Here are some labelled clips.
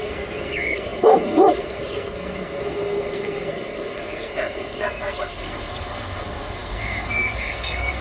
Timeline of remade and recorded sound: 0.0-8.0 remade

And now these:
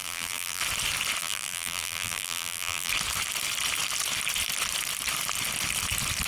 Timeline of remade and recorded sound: 0.0-0.6 remade; 0.6-1.2 recorded; 1.2-2.9 remade; 2.9-6.3 recorded